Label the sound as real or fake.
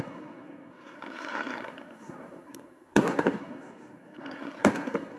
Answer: fake